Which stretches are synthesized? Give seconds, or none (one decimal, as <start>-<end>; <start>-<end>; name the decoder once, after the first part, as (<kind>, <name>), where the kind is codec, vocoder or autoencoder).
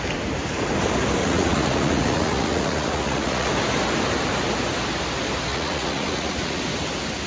1.2-3.5 (vocoder, Vocos); 5.5-6.6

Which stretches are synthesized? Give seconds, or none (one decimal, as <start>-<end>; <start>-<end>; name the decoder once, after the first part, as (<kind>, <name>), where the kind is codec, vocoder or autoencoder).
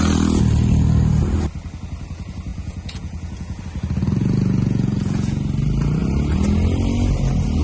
2.5-3.6 (vocoder, Vocos); 4.2-5.4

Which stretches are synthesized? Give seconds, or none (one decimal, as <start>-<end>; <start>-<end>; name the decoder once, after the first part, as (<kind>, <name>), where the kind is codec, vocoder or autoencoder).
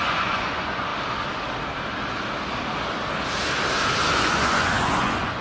0.0-0.9 (vocoder, Vocos); 4.1-5.4